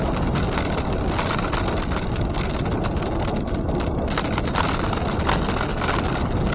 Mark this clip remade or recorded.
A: recorded